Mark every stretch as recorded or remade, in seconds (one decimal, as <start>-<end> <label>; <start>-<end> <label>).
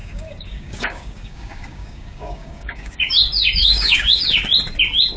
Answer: 0.0-3.1 remade; 3.1-3.6 recorded; 3.6-4.2 remade; 4.2-5.2 recorded